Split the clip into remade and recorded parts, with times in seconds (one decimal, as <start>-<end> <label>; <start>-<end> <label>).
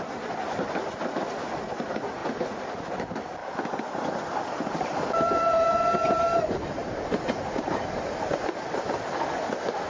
0.0-6.8 recorded; 6.8-8.4 remade; 8.4-9.9 recorded